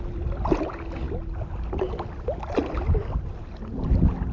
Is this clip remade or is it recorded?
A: recorded